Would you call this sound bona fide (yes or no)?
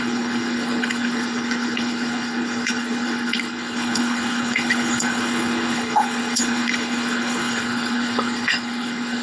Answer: no